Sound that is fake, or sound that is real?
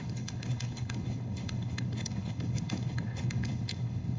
fake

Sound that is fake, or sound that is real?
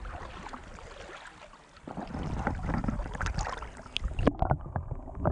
real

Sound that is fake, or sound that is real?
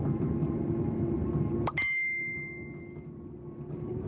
real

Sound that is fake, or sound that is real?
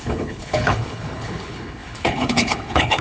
fake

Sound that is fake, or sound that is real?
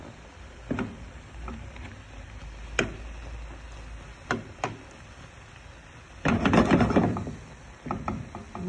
real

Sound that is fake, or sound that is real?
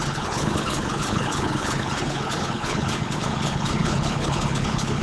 fake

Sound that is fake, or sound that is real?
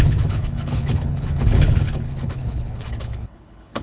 fake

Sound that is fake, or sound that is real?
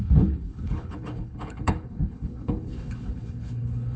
fake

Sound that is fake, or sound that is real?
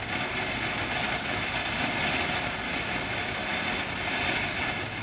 real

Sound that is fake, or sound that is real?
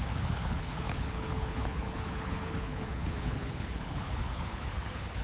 fake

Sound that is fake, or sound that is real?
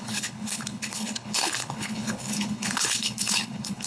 fake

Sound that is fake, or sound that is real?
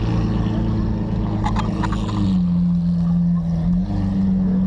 real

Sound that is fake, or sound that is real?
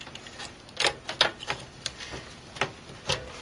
real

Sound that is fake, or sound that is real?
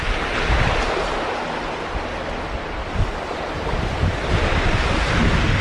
real